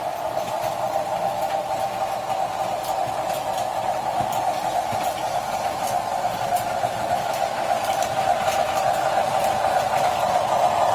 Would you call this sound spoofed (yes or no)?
no